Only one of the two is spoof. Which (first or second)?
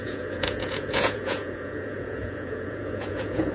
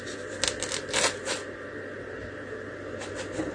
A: first